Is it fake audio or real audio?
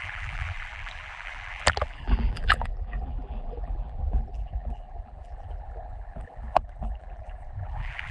fake